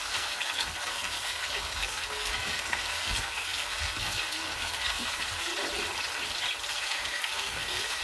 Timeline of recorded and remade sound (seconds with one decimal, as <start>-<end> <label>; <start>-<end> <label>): 0.0-5.5 remade; 5.5-6.7 recorded; 6.7-8.0 remade